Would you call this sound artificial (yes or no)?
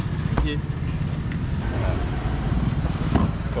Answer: no